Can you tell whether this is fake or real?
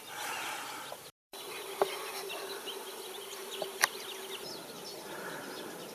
fake